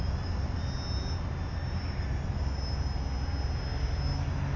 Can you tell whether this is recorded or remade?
recorded